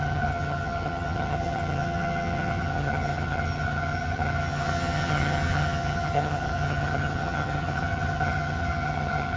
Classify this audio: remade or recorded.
remade